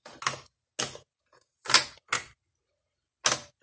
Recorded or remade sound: recorded